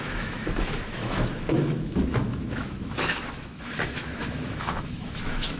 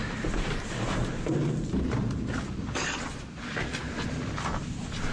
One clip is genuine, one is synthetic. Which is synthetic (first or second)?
first